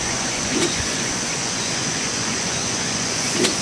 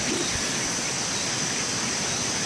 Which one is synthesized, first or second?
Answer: first